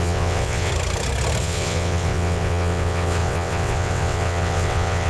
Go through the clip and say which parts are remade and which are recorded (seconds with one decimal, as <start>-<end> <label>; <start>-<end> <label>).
0.0-0.7 remade; 0.7-1.4 recorded; 1.4-5.1 remade